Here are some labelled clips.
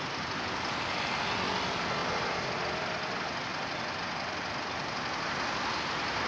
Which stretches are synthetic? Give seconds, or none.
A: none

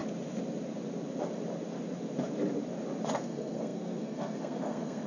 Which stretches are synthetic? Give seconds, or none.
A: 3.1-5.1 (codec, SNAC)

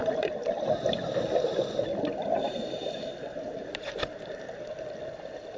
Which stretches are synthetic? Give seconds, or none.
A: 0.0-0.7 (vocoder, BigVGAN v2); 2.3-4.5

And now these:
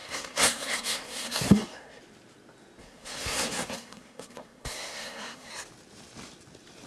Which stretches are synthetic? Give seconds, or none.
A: 0.0-2.0 (codec, SNAC); 2.8-5.5